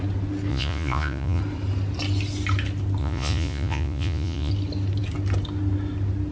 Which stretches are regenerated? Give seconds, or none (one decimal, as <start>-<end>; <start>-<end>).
0.5-1.4; 3.0-4.5